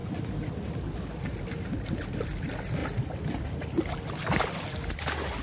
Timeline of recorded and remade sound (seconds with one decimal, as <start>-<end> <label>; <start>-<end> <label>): 0.0-5.4 recorded